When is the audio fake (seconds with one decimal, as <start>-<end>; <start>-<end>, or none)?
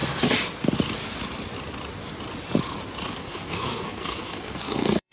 3.1-5.1